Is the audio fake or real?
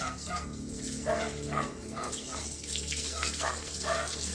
fake